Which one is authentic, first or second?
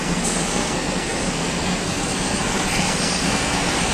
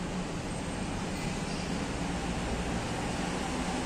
second